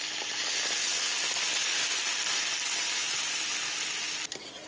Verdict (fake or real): real